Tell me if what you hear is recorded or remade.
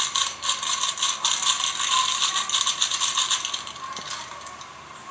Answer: remade